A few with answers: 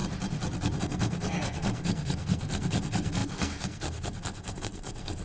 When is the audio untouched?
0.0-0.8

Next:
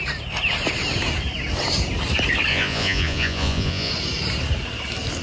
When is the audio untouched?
0.0-2.5; 3.9-5.2

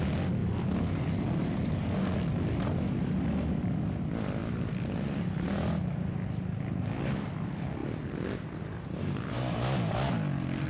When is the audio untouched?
0.0-10.7

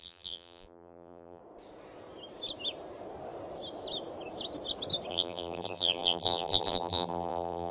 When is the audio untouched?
1.4-5.1

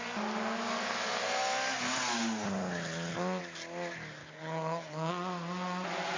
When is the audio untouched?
0.0-4.2; 5.1-6.2

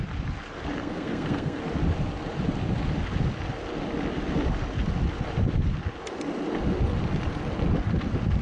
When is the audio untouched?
0.0-0.8; 1.6-8.4